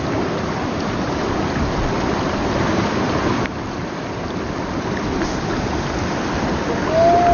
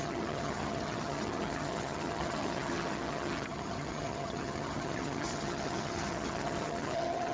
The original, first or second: first